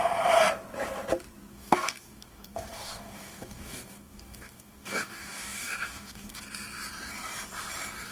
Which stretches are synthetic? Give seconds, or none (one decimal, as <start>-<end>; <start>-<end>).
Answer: 1.5-6.4